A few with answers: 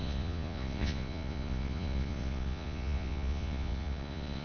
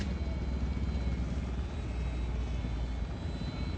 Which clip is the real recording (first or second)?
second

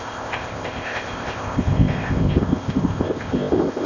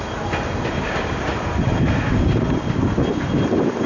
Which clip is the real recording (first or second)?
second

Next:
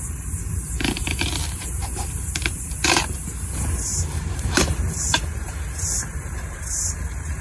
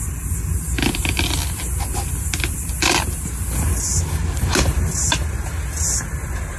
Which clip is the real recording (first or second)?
second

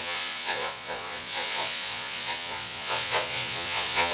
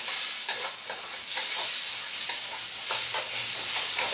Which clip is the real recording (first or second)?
second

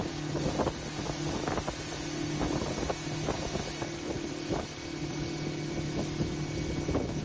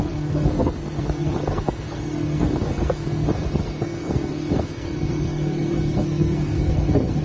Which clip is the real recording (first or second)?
first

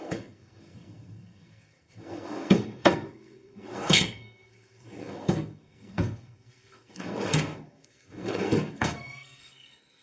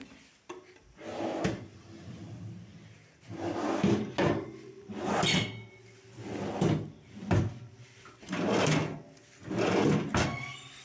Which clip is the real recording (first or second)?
second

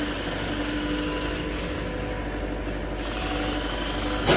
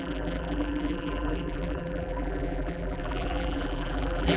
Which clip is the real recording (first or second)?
first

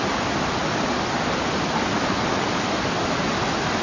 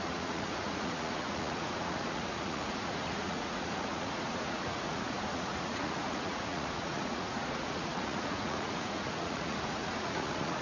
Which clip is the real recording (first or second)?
first